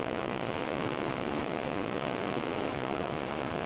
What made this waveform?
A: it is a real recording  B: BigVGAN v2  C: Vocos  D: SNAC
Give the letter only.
C